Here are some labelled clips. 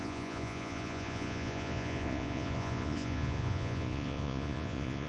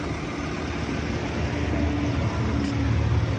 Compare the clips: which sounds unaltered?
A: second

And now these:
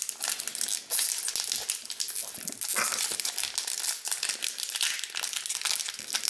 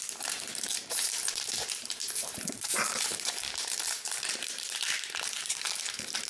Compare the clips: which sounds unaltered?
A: first